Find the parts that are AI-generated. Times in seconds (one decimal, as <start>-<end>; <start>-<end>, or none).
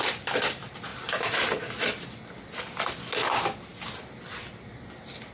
none